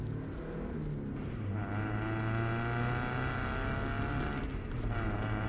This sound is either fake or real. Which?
real